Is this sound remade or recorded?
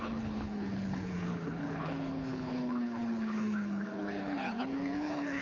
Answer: remade